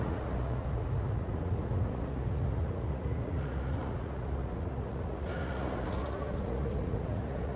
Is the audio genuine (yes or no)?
no